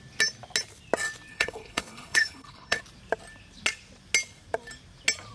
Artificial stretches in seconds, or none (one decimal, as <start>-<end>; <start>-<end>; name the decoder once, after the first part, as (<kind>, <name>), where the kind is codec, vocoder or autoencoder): 1.3-2.8 (codec, HILCodec)